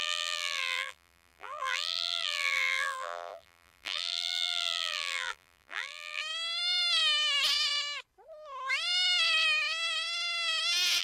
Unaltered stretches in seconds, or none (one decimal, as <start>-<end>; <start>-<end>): 6.2-11.0